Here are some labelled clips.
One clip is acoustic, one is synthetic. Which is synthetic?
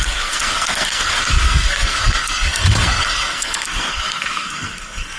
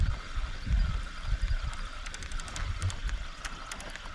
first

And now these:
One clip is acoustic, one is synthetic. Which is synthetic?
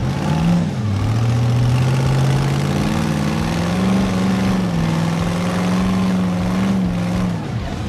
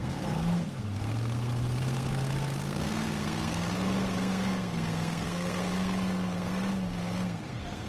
second